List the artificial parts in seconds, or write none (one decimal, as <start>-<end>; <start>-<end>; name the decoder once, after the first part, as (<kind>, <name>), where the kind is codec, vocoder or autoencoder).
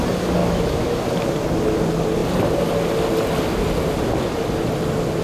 0.4-1.0 (autoencoder, DAC-VAE)